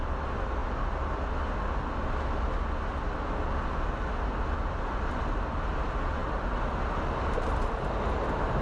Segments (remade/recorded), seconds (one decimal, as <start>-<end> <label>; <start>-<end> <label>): 0.0-8.6 recorded